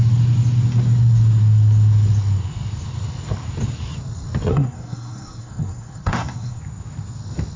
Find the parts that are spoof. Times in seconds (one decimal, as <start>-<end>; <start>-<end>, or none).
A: 4.5-6.6

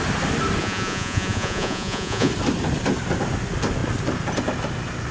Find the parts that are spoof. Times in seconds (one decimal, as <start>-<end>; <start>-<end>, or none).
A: 0.6-2.3

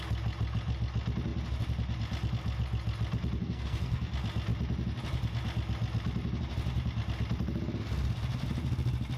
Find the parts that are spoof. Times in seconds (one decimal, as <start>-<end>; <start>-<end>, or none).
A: 3.4-4.1